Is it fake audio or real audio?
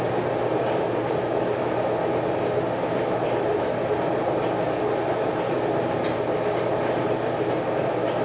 real